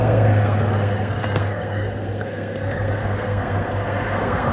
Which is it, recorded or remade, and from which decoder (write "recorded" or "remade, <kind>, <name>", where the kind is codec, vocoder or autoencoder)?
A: remade, codec, SNAC